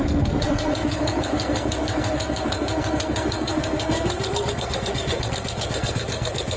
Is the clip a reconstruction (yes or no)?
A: yes